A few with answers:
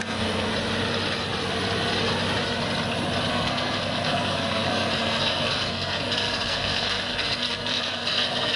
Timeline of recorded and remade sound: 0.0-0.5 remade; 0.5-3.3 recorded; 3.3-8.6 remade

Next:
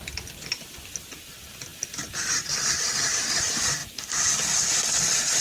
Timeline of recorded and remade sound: 0.0-3.8 remade; 3.8-5.4 recorded

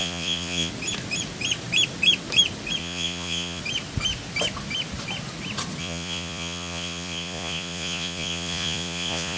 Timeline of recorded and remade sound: 0.0-0.7 remade; 0.7-2.8 recorded; 2.8-3.6 remade; 3.6-5.8 recorded; 5.8-9.4 remade

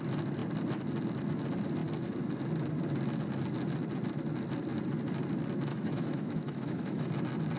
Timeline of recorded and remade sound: 0.0-5.7 recorded; 5.7-7.1 remade; 7.1-7.6 recorded

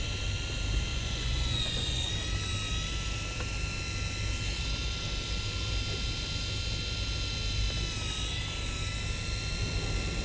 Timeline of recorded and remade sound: 0.0-0.9 recorded; 0.9-2.1 remade; 2.1-10.2 recorded